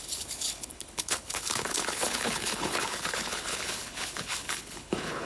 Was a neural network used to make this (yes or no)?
yes